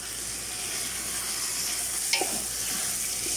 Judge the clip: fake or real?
real